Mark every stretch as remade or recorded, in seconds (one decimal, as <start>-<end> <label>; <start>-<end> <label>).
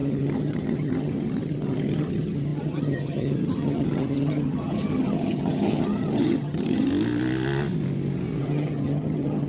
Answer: 0.0-6.9 remade; 6.9-8.4 recorded; 8.4-9.5 remade